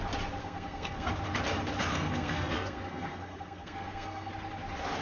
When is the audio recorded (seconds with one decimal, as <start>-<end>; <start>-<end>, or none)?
0.0-0.4; 1.1-1.9; 4.3-5.0

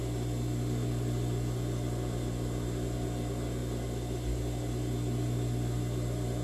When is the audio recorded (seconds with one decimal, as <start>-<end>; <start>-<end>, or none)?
0.0-6.4

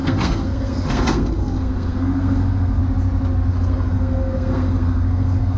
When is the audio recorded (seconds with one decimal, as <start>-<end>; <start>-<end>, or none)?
2.8-3.5